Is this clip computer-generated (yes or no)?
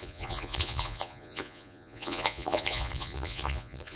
yes